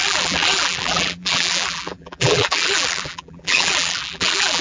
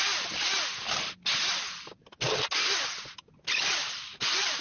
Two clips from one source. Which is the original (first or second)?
second